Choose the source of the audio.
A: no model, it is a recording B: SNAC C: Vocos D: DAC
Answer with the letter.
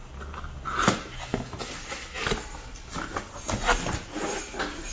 A